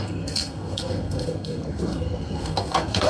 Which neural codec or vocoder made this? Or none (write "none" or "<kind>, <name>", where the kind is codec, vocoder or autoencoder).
codec, SNAC